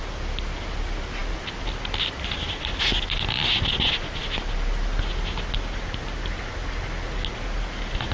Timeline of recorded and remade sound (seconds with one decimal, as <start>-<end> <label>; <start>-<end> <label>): 0.0-8.1 recorded